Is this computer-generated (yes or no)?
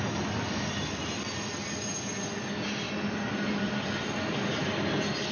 no